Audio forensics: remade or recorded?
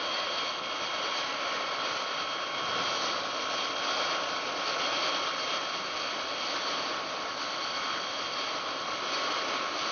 recorded